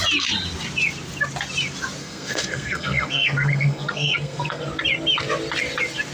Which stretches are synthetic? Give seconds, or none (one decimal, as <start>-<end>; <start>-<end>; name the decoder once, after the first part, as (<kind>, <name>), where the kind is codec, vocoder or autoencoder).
2.0-4.6 (codec, SNAC)